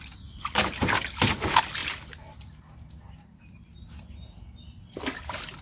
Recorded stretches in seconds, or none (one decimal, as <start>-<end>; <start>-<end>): 0.0-5.6